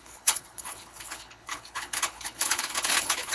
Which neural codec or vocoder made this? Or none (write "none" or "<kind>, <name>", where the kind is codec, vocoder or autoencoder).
codec, HILCodec